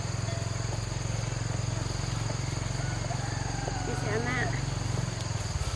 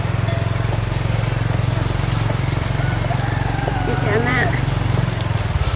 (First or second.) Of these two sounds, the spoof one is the second